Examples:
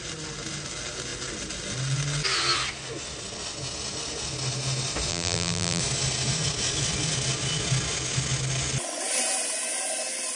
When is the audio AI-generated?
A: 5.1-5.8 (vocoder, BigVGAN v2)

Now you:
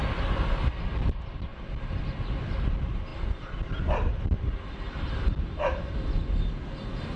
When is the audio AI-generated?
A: none

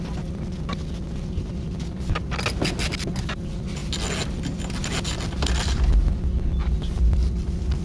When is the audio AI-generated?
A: none

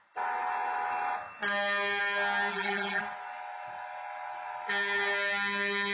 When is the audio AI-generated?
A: 2.5-3.0 (vocoder, BigVGAN v2)

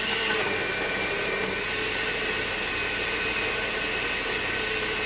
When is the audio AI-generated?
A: none

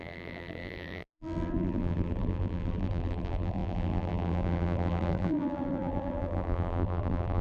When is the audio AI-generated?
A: 0.0-7.4 (vocoder, BigVGAN v2)

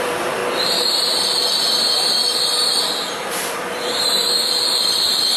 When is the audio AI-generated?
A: 0.0-0.4 (vocoder, BigVGAN v2); 3.1-5.4

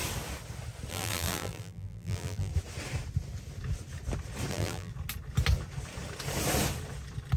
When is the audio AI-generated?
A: 0.9-2.5 (vocoder, BigVGAN v2); 4.5-4.9